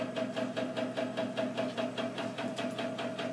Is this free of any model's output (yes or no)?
yes